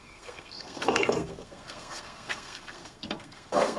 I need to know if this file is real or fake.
fake